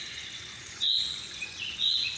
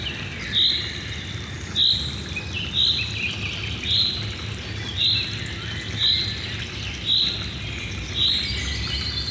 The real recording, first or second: second